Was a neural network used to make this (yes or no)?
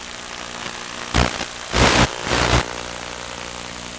no